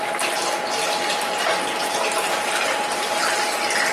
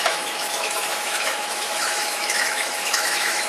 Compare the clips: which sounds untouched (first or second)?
first